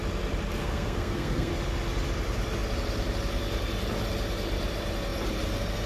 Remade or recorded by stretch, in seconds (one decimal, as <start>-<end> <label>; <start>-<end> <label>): 0.0-0.6 recorded; 0.6-1.5 remade; 1.5-5.9 recorded